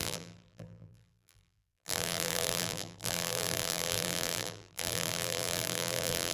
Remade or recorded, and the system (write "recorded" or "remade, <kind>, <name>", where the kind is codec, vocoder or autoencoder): remade, vocoder, BigVGAN v2